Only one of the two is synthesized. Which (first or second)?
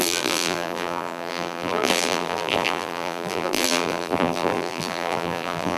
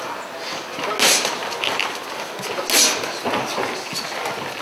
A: first